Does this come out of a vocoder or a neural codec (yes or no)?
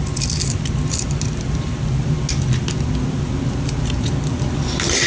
no